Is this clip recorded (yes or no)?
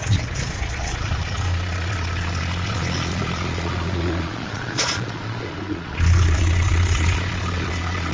no